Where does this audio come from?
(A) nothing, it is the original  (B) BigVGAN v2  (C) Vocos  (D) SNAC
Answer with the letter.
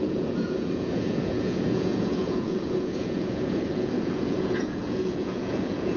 C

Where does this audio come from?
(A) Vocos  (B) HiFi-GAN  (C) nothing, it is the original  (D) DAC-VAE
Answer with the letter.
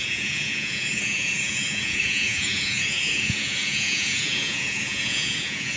A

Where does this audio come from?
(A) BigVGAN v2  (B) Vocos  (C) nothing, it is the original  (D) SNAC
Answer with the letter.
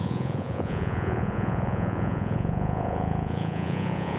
B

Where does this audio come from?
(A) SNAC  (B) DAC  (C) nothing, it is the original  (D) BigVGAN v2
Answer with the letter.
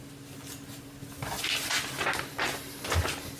C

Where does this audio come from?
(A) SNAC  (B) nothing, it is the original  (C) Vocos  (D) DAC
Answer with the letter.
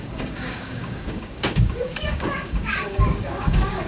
D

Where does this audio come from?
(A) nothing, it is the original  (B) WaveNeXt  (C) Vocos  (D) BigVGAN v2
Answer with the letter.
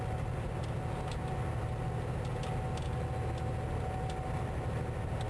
A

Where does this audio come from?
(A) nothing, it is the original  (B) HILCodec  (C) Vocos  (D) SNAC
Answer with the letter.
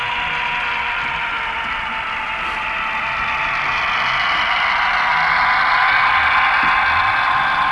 A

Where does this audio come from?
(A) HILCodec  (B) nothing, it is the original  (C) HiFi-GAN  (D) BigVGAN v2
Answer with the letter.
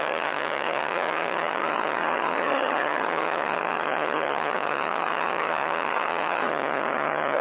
C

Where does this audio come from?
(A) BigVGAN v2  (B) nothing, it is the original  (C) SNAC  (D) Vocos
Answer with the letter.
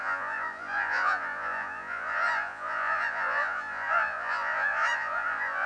D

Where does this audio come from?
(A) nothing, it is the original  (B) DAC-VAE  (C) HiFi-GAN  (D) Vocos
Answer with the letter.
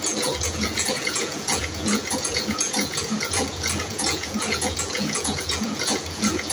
D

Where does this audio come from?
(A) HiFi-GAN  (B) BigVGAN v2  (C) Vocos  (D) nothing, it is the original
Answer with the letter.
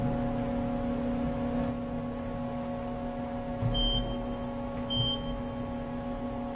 D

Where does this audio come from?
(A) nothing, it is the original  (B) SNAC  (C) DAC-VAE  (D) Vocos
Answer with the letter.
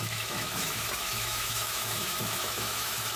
C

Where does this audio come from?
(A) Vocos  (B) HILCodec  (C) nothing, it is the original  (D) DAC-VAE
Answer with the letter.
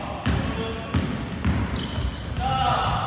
C